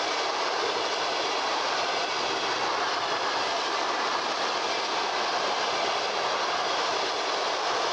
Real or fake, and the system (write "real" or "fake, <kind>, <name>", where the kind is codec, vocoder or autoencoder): real